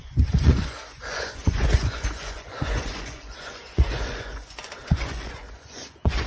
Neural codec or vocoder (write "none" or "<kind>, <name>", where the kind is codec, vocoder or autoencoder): vocoder, Vocos